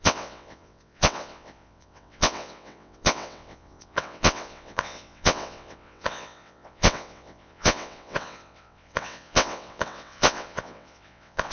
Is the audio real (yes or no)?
no